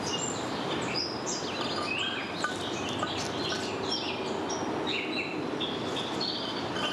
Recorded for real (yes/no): yes